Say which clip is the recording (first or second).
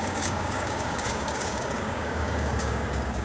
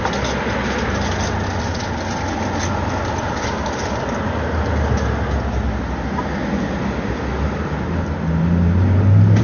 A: second